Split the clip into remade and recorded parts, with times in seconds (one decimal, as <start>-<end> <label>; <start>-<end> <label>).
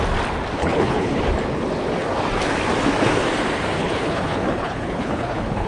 0.0-0.6 recorded; 0.6-1.2 remade; 1.2-3.8 recorded; 3.8-5.7 remade